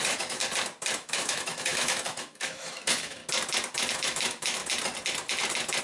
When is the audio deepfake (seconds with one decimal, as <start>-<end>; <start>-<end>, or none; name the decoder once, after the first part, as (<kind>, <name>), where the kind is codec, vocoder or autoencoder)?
0.0-0.4 (autoencoder, DAC-VAE); 0.9-3.2; 3.9-4.6